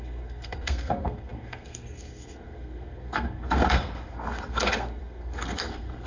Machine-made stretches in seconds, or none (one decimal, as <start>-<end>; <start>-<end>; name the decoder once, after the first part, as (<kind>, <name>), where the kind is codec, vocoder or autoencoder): 0.0-6.1 (codec, SNAC)